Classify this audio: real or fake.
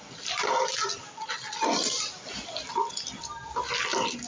real